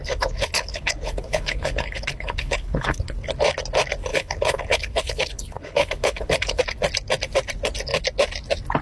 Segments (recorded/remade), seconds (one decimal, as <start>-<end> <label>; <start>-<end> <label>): 0.0-3.0 remade; 3.0-4.1 recorded; 4.1-6.6 remade; 6.6-8.8 recorded